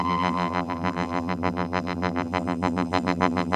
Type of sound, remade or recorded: remade